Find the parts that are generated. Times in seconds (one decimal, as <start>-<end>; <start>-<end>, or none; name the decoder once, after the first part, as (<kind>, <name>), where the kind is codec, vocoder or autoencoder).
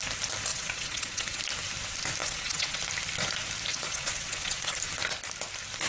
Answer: 0.5-1.4 (vocoder, WaveNeXt); 2.2-2.8; 3.7-4.7